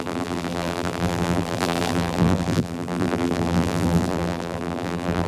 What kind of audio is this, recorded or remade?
remade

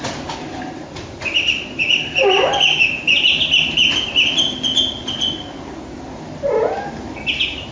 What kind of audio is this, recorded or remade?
recorded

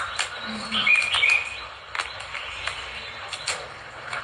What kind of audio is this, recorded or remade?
remade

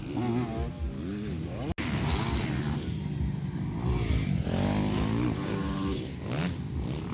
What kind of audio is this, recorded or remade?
recorded